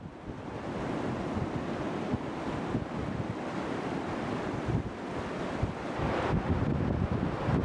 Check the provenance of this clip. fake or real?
real